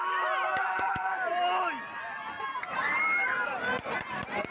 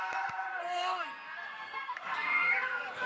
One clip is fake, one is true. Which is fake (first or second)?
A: second